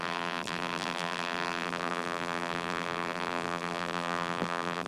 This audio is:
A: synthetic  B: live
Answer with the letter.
A